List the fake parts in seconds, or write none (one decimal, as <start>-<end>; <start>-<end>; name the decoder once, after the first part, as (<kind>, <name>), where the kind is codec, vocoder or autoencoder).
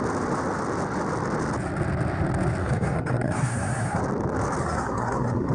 2.6-4.0 (codec, SNAC); 4.6-5.5